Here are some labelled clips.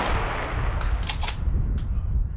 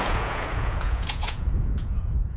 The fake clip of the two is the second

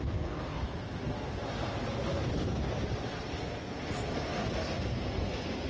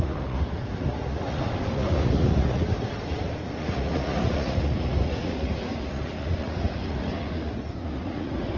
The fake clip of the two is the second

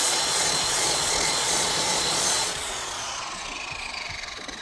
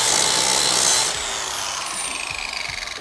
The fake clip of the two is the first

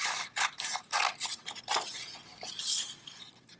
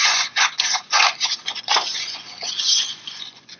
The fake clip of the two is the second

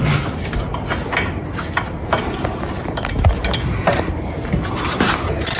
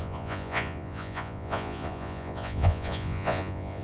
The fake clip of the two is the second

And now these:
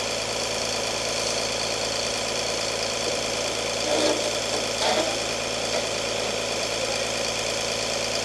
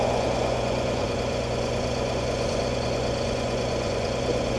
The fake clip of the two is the second